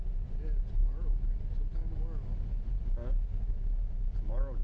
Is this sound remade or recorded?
recorded